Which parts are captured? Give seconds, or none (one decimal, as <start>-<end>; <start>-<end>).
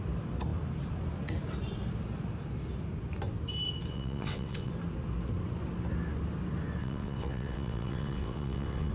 0.0-3.9; 4.7-6.8